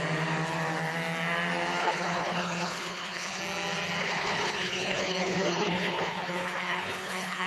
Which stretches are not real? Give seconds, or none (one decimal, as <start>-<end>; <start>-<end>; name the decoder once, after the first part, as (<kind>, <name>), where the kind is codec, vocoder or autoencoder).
1.8-3.4 (codec, HILCodec); 4.0-7.5